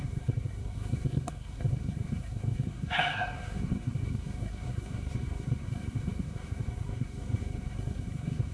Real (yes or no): no